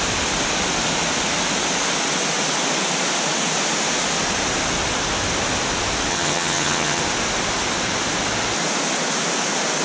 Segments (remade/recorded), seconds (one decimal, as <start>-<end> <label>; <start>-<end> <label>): 0.0-6.1 recorded; 6.1-7.0 remade; 7.0-9.8 recorded